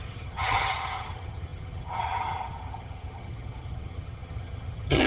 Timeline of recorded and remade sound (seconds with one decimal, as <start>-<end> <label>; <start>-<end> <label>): 0.0-5.1 remade